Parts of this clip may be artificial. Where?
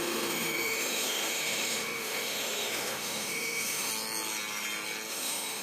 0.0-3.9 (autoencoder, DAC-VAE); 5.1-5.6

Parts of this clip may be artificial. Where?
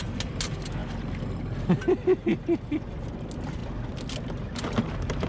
none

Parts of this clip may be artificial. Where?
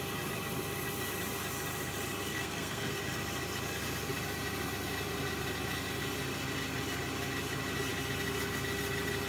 2.3-3.0 (codec, SNAC)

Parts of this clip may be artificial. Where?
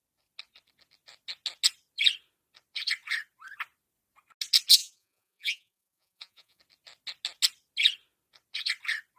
4.8-6.6 (vocoder, Vocos)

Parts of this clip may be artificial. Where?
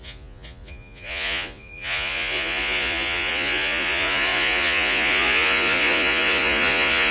0.0-7.1 (vocoder, Vocos)